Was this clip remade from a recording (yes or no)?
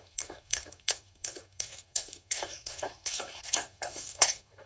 yes